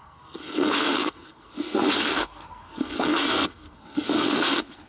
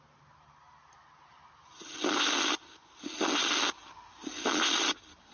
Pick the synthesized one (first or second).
first